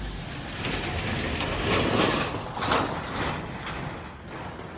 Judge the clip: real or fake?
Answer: real